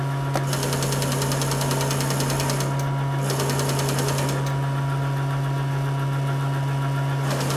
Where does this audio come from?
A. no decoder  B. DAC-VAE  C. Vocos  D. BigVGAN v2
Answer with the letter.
A